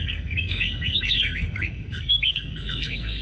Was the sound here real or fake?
fake